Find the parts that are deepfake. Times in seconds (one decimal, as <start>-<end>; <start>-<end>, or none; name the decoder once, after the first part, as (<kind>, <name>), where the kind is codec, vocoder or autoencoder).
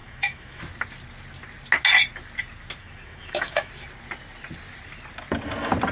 0.0-0.6 (autoencoder, DAC-VAE); 2.8-3.7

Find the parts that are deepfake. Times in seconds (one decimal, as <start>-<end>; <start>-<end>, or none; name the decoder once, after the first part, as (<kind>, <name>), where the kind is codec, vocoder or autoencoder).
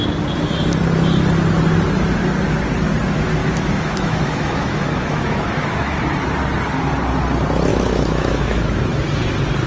3.4-6.0 (autoencoder, DAC-VAE); 7.7-9.0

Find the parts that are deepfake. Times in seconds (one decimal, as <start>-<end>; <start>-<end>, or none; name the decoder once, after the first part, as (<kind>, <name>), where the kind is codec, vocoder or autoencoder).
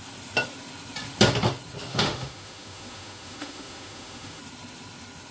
1.9-4.4 (autoencoder, DAC-VAE)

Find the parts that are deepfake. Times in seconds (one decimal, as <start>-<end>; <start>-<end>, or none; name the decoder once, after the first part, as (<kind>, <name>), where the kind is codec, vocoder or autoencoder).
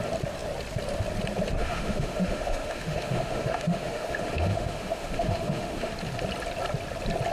1.6-5.9 (autoencoder, DAC-VAE)